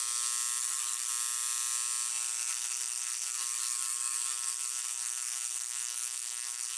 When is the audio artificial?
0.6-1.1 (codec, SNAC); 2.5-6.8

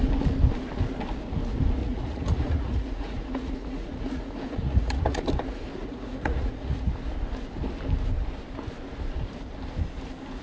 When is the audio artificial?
1.8-5.2 (vocoder, Vocos); 5.8-6.9

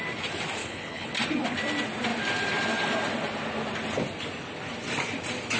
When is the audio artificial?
0.6-1.1 (codec, HILCodec)